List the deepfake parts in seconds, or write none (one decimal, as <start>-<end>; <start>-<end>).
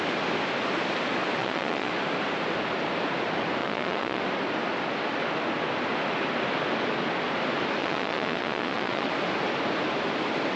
1.4-1.9; 3.6-4.2; 7.8-9.1